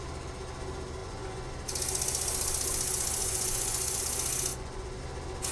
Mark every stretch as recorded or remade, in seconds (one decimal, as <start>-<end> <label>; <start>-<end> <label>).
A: 0.0-1.0 recorded; 1.0-1.5 remade; 1.5-3.2 recorded; 3.2-4.0 remade; 4.0-4.5 recorded; 4.5-5.0 remade; 5.0-5.5 recorded